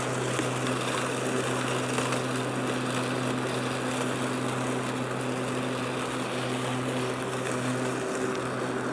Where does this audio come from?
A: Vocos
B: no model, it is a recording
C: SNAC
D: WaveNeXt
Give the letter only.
B